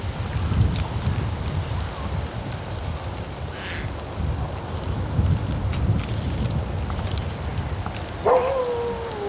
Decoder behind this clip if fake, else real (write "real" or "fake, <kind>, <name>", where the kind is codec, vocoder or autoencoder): real